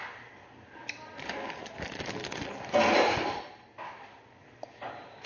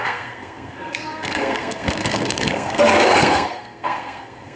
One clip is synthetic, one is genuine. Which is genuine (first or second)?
first